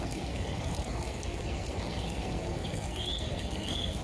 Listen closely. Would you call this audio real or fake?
fake